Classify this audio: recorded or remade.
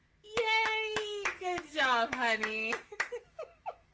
remade